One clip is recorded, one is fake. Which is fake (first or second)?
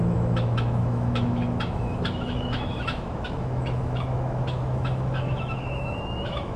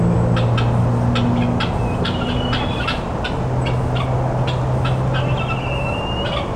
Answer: first